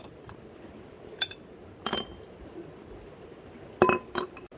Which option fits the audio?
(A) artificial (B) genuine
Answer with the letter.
B